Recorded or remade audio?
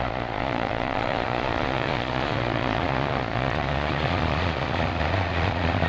remade